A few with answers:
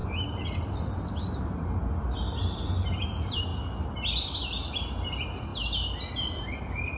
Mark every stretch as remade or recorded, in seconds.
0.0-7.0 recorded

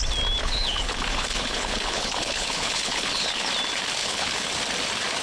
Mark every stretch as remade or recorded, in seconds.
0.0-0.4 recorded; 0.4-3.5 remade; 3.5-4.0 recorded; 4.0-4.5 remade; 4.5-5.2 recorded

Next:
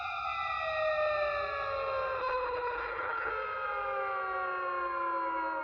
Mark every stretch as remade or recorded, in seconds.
0.0-2.2 recorded; 2.2-3.3 remade; 3.3-5.6 recorded

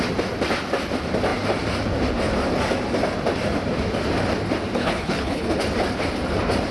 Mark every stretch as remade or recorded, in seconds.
0.0-4.8 recorded; 4.8-5.6 remade; 5.6-6.7 recorded

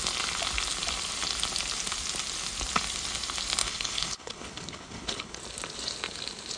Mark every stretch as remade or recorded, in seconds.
0.0-3.6 recorded; 3.6-5.4 remade; 5.4-6.6 recorded

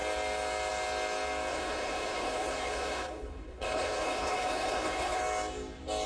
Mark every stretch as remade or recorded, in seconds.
0.0-1.5 recorded; 1.5-5.2 remade; 5.2-6.1 recorded